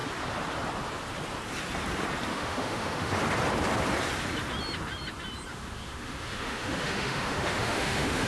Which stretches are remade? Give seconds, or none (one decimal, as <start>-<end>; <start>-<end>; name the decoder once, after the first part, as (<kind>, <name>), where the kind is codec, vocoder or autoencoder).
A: 2.3-3.1 (autoencoder, DAC-VAE); 5.5-8.3